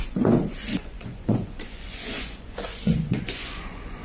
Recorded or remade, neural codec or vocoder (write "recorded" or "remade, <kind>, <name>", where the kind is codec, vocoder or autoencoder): remade, vocoder, Vocos